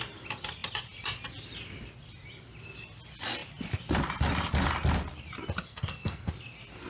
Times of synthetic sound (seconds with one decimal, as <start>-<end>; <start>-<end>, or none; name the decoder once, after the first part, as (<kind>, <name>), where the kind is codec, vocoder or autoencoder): 5.7-6.3 (codec, SNAC)